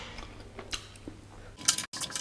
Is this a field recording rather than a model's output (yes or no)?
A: yes